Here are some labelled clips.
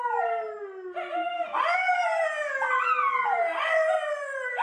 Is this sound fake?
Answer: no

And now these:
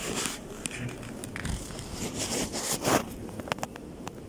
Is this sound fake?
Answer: no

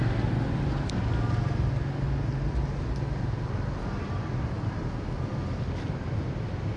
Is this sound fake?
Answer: no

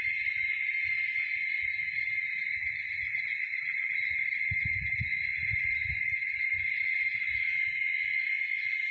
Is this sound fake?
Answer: no